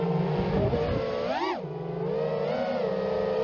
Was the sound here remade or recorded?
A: recorded